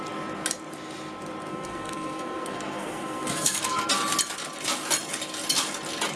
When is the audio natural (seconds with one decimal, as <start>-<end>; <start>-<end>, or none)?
0.0-1.5; 3.8-6.2